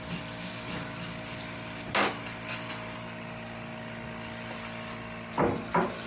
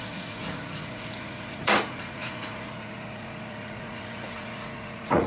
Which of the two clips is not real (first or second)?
second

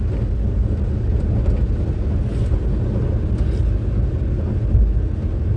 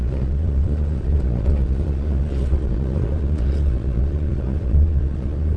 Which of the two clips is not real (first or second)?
second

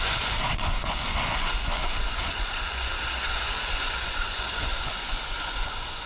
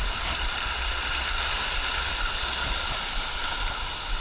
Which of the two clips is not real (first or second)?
first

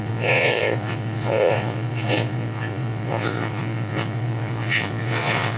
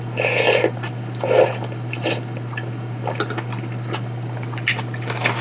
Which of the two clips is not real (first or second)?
first